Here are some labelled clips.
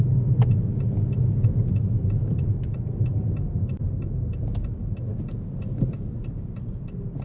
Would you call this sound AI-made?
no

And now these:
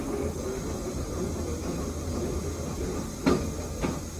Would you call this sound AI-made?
no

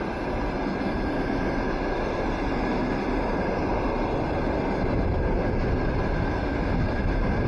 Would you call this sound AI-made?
no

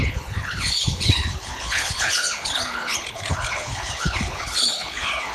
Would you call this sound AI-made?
yes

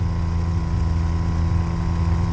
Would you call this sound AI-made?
no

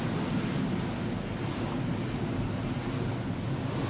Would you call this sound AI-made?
no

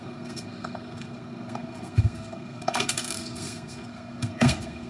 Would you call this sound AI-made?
yes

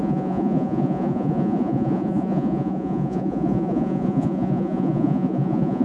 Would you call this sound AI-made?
yes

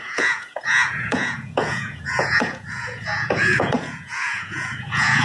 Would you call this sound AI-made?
yes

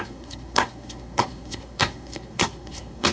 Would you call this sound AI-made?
yes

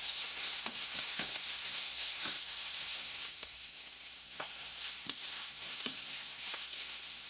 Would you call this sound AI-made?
yes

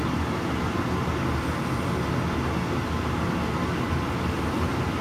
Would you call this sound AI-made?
no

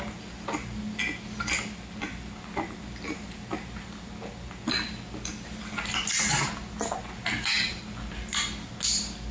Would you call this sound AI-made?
no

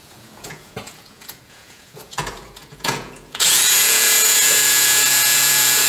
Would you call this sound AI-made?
yes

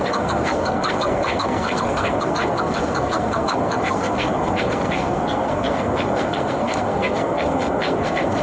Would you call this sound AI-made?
yes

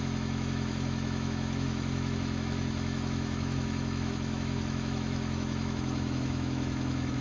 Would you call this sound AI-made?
yes